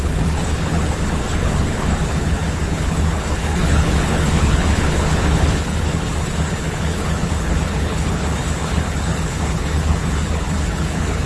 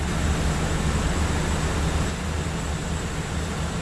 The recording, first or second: second